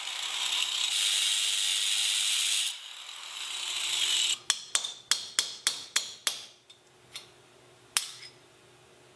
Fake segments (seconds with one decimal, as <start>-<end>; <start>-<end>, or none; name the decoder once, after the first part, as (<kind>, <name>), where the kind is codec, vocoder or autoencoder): none